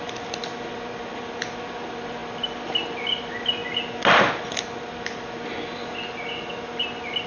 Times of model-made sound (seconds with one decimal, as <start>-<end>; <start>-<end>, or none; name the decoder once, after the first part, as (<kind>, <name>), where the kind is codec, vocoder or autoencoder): none